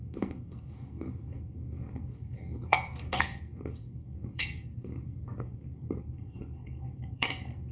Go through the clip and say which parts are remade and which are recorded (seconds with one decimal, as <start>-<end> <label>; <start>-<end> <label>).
0.0-7.7 remade